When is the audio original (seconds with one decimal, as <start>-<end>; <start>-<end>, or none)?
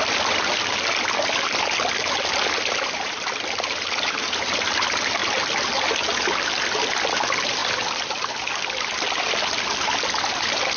5.2-6.8